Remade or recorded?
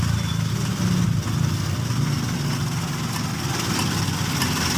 recorded